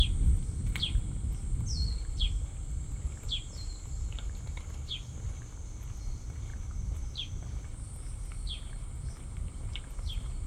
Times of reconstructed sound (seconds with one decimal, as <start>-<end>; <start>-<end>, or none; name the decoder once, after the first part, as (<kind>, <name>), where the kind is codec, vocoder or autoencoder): none